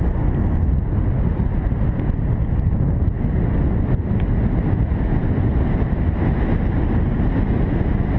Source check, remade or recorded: recorded